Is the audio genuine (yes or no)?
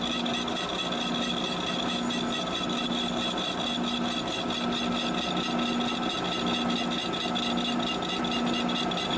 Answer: yes